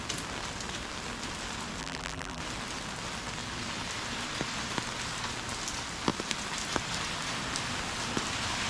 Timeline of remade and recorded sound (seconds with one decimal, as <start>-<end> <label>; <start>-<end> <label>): 0.0-1.8 recorded; 1.8-2.4 remade; 2.4-8.7 recorded